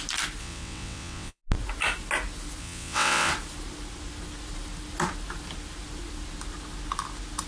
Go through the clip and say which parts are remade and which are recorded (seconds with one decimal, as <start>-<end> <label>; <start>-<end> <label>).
0.0-0.4 recorded; 0.4-1.4 remade; 1.4-2.6 recorded; 2.6-3.3 remade; 3.3-7.5 recorded